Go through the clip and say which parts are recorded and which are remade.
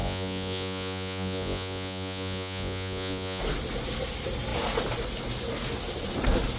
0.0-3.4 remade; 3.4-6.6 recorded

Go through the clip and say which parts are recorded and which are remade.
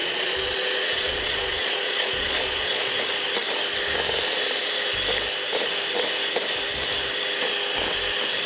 0.0-2.9 remade; 2.9-8.5 recorded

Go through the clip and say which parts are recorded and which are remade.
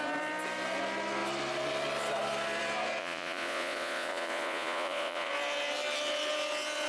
0.0-3.0 recorded; 3.0-5.3 remade; 5.3-6.9 recorded